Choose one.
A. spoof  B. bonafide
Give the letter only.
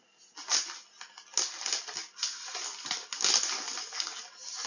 B